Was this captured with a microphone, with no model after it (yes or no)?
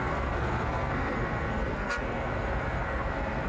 no